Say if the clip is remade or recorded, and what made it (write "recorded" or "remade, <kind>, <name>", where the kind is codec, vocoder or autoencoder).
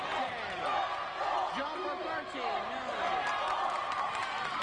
recorded